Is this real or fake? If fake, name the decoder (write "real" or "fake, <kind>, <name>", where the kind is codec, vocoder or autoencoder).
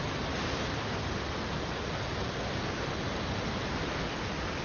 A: real